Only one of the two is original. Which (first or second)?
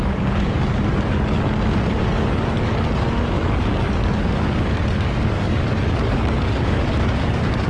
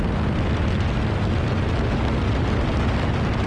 second